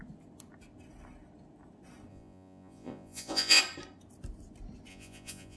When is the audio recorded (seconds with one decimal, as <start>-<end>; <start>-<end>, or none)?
0.0-2.1; 3.6-4.9